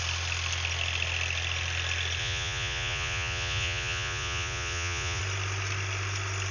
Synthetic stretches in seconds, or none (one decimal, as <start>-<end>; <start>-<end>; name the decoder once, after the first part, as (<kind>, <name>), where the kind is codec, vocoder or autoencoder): 2.2-5.2 (vocoder, Vocos)